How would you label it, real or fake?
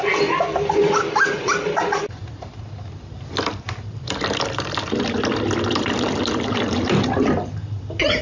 fake